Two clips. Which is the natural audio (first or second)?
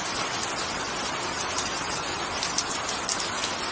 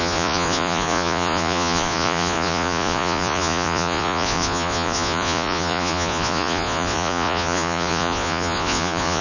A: first